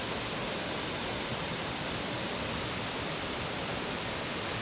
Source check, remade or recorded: recorded